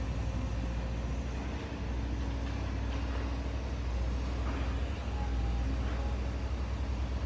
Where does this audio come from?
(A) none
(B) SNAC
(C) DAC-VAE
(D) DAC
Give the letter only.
A